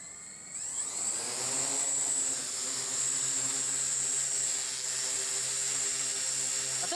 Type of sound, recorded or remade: recorded